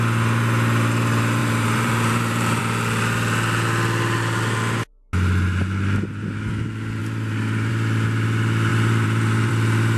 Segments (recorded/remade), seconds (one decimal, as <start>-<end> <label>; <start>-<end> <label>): 0.0-1.4 recorded; 1.4-2.6 remade; 2.6-7.0 recorded; 7.0-7.7 remade; 7.7-8.7 recorded; 8.7-9.5 remade; 9.5-10.0 recorded